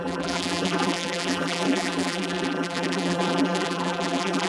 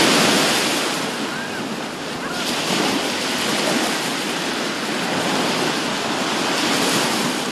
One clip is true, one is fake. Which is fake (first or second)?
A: first